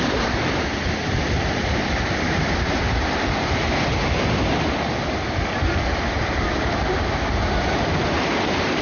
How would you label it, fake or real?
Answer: real